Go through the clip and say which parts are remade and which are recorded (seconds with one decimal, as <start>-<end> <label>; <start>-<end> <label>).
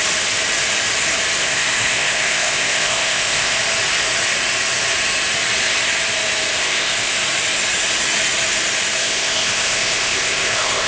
0.0-1.4 recorded; 1.4-3.6 remade; 3.6-6.5 recorded; 6.5-7.1 remade; 7.1-9.0 recorded; 9.0-10.9 remade